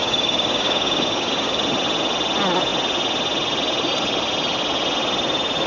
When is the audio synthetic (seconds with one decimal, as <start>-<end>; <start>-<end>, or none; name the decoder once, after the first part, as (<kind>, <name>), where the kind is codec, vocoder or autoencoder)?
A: 0.0-1.6 (codec, DAC)